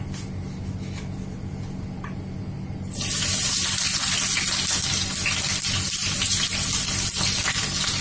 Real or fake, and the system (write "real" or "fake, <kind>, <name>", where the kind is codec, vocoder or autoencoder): real